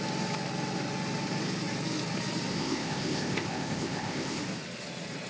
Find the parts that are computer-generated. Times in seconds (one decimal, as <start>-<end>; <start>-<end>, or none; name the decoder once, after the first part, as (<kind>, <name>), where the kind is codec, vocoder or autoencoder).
2.5-4.4 (codec, ZipCodec)